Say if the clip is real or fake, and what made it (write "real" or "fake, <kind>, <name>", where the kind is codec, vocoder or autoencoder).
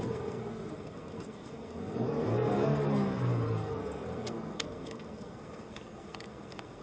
fake, codec, SNAC